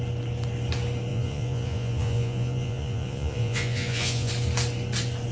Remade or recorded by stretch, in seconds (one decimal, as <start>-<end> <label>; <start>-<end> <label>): 0.0-1.1 recorded; 1.1-4.3 remade; 4.3-5.3 recorded